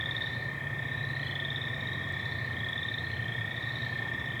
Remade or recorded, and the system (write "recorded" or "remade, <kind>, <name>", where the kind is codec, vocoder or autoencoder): recorded